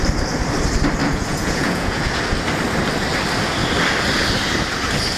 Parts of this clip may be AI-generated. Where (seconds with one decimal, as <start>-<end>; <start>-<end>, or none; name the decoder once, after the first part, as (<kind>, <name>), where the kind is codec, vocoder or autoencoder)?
1.0-2.2 (vocoder, Vocos)